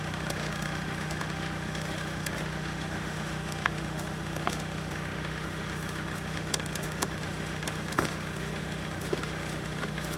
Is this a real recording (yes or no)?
no